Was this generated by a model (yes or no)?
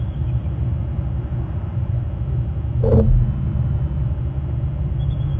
no